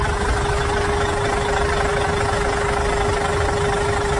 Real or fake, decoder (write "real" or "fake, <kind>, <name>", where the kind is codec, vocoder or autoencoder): real